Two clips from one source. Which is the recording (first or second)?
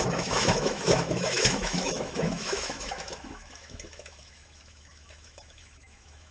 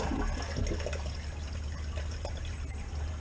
second